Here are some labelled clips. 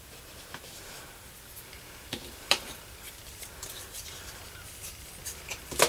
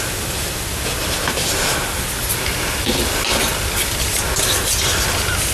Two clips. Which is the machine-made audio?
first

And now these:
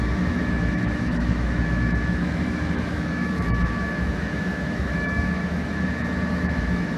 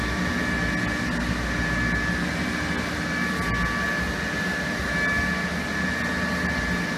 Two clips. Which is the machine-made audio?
first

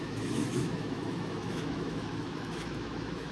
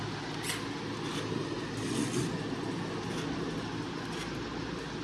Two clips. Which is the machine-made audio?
first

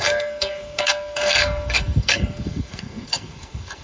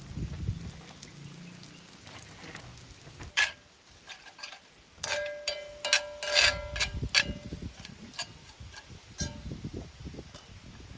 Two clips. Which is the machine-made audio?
first